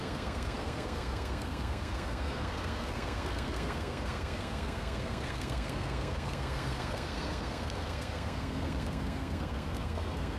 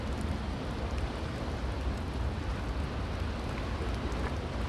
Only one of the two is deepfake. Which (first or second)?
first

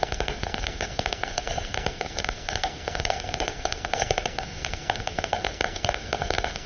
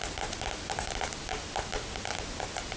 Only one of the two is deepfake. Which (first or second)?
first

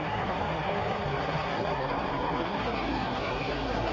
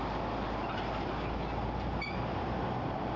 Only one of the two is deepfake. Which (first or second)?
first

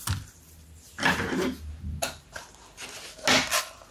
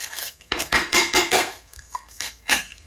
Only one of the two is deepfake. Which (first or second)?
second